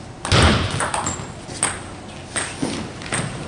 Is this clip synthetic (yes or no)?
no